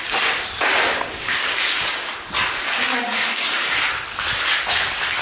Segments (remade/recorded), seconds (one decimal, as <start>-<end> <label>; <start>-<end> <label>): 0.0-0.9 recorded; 0.9-2.1 remade; 2.1-2.9 recorded; 2.9-3.8 remade; 3.8-5.2 recorded